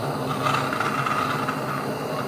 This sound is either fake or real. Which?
real